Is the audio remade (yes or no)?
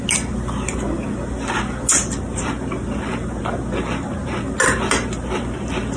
no